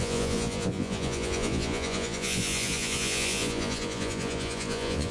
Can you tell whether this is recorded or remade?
remade